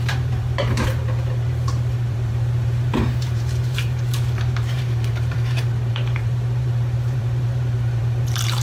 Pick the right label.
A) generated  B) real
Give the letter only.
A